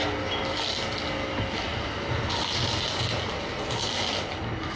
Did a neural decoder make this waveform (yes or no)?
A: no